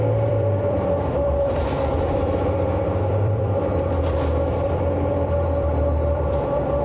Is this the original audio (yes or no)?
no